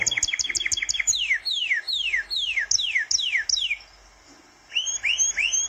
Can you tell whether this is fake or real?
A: real